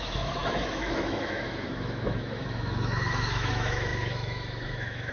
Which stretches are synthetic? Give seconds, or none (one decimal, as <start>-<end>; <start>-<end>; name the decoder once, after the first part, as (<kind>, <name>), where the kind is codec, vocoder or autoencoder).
0.0-5.1 (autoencoder, DAC-VAE)